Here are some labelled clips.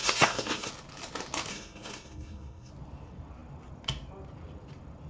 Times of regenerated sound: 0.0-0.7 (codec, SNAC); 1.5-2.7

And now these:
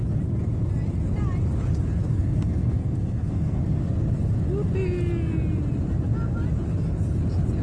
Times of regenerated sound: 2.1-3.6 (codec, SNAC)

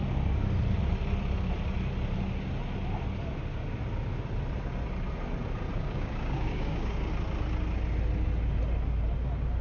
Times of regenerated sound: 5.7-7.1 (codec, DAC)

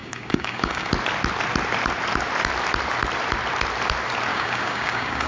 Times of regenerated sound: 0.0-0.9 (codec, DAC); 4.3-5.3

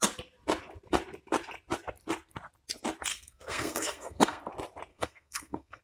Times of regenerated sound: 3.1-4.4 (codec, SNAC); 4.9-5.8

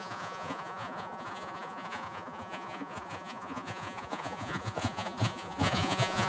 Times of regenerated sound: 0.0-6.3 (vocoder, Vocos)

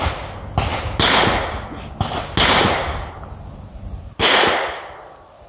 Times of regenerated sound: none